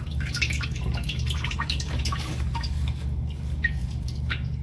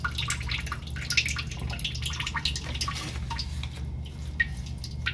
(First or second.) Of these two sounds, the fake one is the first